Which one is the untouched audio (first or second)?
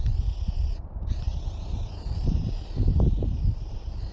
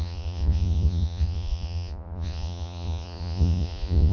first